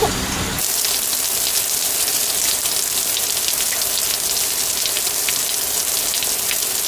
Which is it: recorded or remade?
recorded